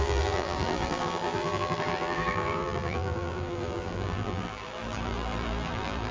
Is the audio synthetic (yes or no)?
yes